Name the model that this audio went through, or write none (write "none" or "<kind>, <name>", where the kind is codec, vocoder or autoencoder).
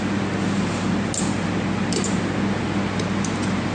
none